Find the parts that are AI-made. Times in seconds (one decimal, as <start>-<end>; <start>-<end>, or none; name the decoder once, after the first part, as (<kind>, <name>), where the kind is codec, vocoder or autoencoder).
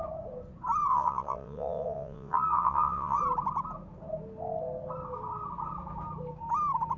0.9-3.2 (vocoder, WaveNeXt)